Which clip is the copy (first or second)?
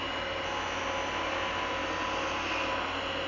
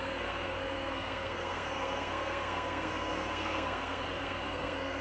second